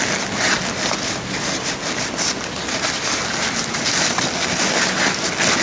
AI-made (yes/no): no